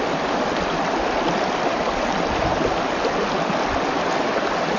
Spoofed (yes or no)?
no